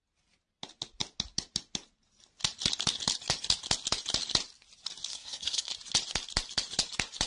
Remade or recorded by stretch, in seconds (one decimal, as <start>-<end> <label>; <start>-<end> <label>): 0.0-5.1 recorded; 5.1-5.7 remade; 5.7-7.3 recorded